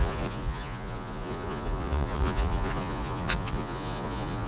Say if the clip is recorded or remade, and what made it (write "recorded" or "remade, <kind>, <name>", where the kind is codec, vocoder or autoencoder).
remade, vocoder, Vocos